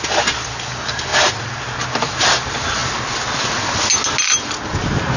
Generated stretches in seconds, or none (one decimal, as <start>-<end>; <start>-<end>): none